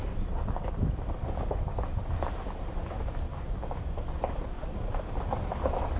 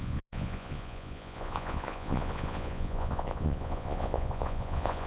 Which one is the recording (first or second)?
first